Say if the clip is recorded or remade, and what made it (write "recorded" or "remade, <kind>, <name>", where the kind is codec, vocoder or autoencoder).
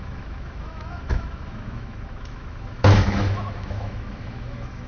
remade, autoencoder, DAC-VAE